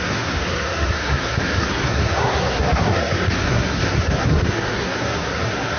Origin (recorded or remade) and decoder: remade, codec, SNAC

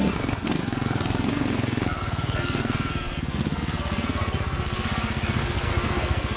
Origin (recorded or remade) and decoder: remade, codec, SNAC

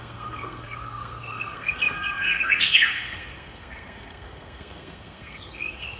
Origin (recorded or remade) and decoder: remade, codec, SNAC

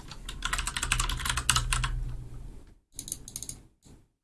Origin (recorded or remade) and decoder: recorded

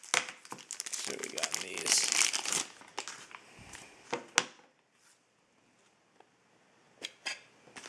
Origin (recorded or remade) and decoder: recorded